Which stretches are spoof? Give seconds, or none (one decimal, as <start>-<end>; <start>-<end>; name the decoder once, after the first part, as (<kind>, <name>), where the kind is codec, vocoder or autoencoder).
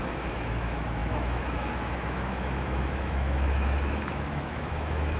0.0-5.2 (autoencoder, DAC-VAE)